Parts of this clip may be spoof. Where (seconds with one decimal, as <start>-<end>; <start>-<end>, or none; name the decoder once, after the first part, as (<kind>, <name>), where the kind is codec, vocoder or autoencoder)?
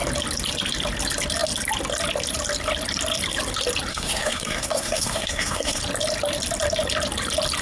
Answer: 3.9-5.8 (codec, SNAC)